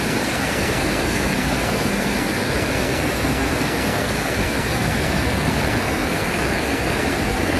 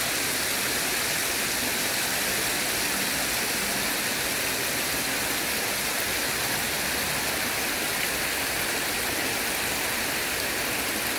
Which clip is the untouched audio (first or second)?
second